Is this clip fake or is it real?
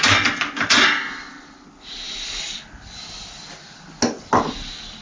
real